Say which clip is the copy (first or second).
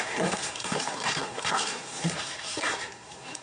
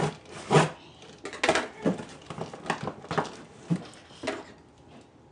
first